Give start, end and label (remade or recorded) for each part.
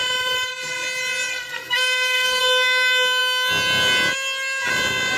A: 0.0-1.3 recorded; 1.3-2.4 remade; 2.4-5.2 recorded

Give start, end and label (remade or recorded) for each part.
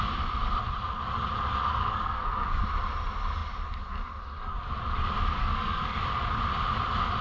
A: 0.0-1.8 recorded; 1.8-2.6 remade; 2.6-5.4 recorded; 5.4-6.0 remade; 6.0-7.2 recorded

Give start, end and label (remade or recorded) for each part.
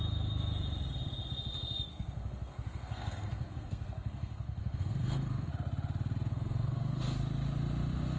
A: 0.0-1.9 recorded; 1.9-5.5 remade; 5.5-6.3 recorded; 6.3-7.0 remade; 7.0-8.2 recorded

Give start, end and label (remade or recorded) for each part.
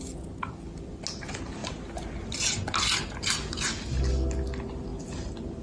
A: 0.0-5.6 recorded